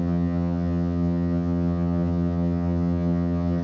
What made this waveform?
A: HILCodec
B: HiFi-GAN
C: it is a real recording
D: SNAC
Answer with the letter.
B